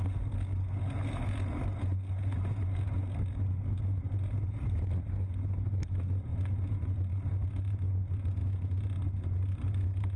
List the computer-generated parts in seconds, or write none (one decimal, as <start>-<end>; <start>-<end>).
none